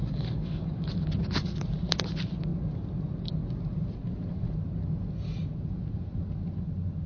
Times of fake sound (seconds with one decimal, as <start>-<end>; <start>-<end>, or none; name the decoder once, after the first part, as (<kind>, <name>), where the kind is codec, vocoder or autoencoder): 0.0-1.0 (codec, DAC)